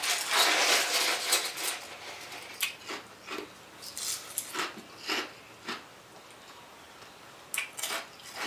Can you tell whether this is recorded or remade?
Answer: recorded